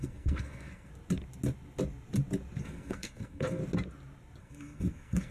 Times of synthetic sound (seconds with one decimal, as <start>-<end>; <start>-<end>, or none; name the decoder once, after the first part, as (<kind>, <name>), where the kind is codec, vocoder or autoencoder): 0.0-0.9 (codec, SNAC); 2.6-3.6; 4.4-5.3